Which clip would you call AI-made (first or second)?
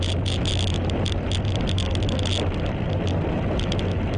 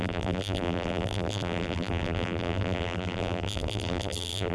second